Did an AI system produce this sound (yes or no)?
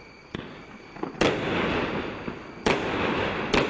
no